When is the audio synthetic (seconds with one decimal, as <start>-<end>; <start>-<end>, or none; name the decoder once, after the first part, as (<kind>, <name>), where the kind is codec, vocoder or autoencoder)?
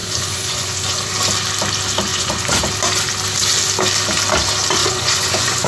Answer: 0.0-1.0 (vocoder, Vocos); 2.1-2.6; 4.8-5.7